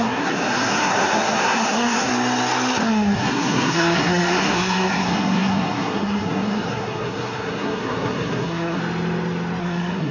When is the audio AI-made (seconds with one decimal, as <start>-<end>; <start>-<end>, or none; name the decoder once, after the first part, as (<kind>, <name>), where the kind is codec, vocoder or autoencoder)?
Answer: 0.0-2.1 (codec, SNAC); 2.8-8.8; 9.6-10.1